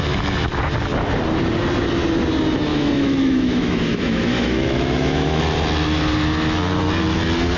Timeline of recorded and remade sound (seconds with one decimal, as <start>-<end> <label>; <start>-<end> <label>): 0.0-2.7 recorded; 2.7-5.4 remade; 5.4-7.6 recorded